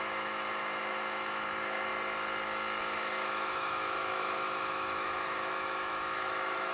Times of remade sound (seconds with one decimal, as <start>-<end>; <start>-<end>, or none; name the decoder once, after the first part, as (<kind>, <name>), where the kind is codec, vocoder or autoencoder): 0.0-1.9 (autoencoder, DAC-VAE); 2.8-6.7